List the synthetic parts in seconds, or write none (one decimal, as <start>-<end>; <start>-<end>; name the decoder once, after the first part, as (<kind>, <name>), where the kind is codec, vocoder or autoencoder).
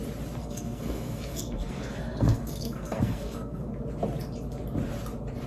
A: 0.4-3.7 (codec, SNAC)